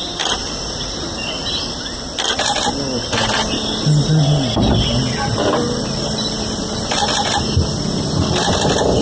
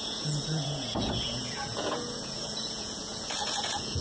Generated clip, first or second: second